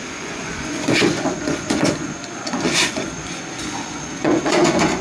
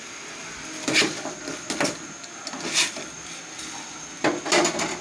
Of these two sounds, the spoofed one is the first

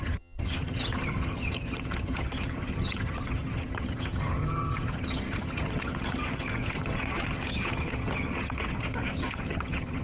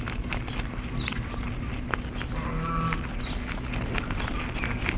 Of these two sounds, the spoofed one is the first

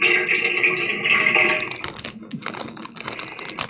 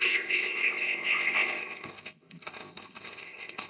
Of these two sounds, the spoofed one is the second